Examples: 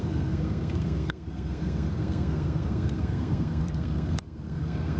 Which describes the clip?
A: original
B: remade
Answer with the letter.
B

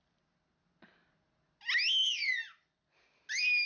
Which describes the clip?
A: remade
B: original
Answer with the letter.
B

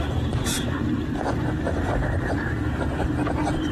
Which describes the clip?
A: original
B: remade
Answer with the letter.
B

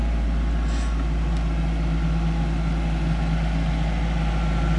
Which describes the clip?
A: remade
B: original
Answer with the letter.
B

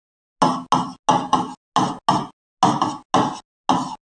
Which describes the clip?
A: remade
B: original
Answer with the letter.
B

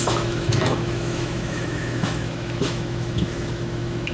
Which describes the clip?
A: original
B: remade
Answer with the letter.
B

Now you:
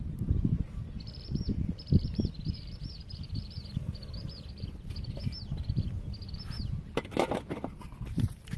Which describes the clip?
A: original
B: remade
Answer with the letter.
A